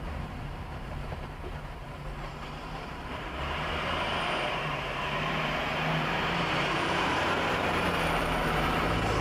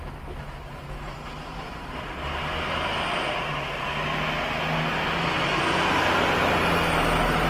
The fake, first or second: first